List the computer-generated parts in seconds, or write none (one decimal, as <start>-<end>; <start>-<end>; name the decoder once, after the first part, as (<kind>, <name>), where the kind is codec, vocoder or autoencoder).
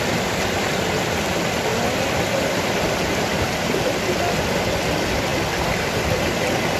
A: 1.7-2.7 (vocoder, BigVGAN v2); 3.3-3.9